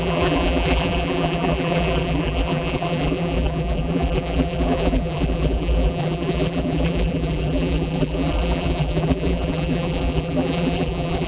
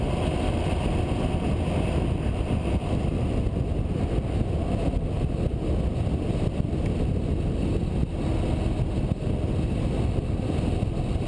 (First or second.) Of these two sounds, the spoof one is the first